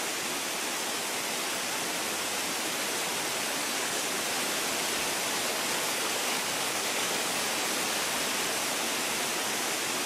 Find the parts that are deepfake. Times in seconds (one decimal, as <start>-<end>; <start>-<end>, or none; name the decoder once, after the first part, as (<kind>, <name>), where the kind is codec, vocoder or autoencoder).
3.6-4.2 (codec, DAC); 5.5-7.4